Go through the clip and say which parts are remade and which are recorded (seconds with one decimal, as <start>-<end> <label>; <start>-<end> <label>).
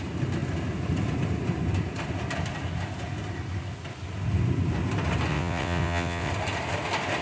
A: 0.0-5.3 recorded; 5.3-6.3 remade; 6.3-7.2 recorded